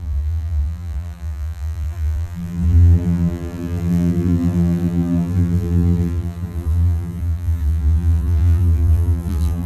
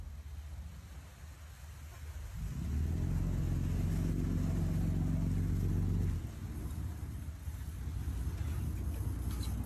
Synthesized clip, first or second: first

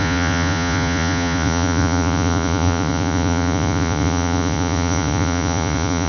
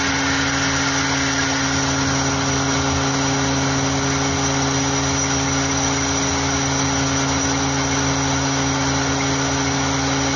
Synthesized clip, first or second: first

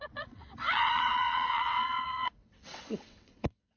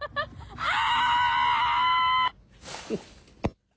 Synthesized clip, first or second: first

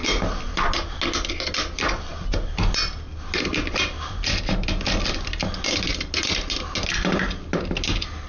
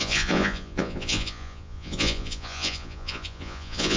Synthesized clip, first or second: second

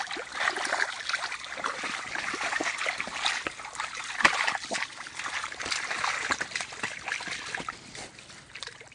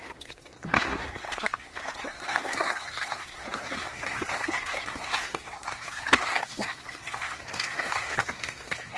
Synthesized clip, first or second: second